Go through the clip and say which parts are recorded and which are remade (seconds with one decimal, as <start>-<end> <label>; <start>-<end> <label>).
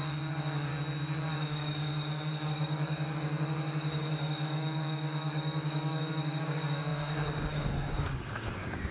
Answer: 0.0-0.7 remade; 0.7-1.3 recorded; 1.3-8.9 remade